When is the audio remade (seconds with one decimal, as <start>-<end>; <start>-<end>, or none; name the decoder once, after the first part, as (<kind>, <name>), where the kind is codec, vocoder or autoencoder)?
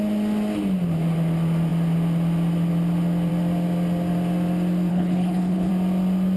4.9-5.7 (codec, HILCodec)